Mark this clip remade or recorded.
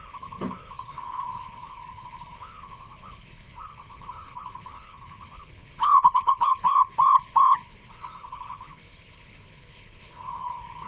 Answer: remade